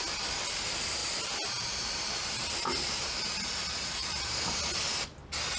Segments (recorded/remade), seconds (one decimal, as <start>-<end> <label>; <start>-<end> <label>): 0.0-1.0 recorded; 1.0-3.2 remade; 3.2-4.0 recorded; 4.0-4.6 remade; 4.6-5.6 recorded